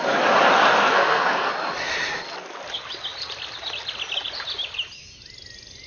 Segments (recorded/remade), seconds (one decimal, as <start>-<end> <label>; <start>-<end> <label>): 0.0-0.8 recorded; 0.8-1.5 remade; 1.5-5.9 recorded